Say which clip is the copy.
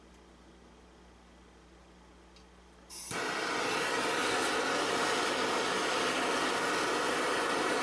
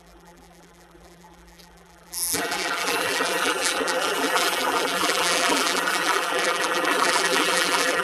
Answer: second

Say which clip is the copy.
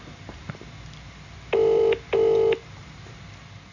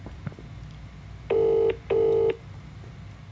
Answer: first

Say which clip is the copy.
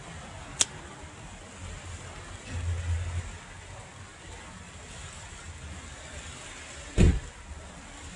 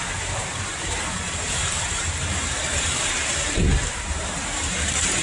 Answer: second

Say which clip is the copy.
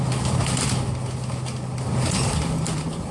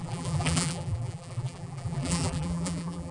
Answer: second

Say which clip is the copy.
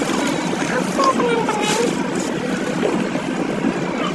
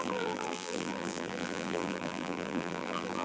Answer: second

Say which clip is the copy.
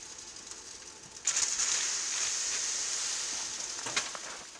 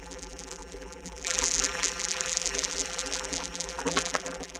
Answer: second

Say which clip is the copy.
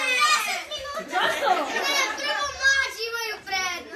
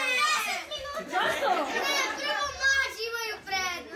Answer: first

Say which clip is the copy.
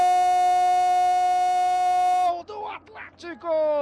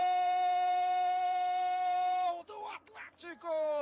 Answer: second